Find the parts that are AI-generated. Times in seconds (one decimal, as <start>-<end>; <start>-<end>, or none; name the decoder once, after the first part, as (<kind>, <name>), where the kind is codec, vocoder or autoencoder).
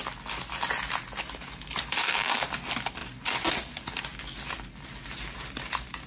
none